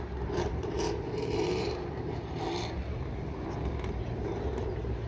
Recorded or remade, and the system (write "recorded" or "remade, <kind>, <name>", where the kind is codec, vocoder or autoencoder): remade, vocoder, BigVGAN v2